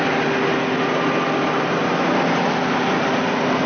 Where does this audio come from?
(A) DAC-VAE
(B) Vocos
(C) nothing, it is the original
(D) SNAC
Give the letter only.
C